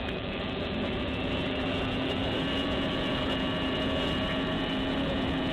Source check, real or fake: fake